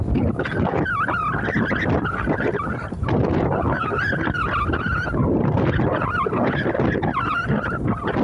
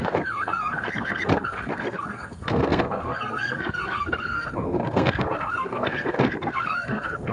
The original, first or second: first